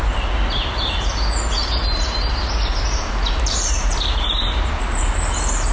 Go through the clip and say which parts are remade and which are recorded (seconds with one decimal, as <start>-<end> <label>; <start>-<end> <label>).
0.0-1.6 recorded; 1.6-5.0 remade; 5.0-5.7 recorded